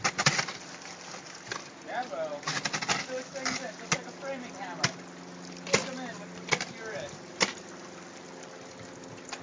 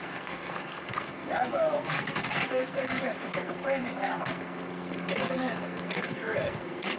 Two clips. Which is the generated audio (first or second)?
second